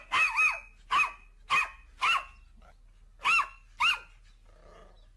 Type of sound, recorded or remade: recorded